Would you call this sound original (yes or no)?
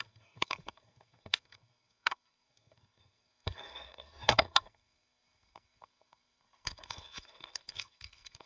no